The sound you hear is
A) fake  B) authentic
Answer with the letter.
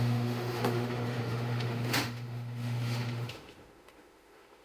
A